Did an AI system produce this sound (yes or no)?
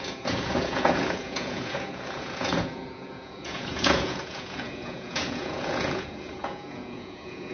yes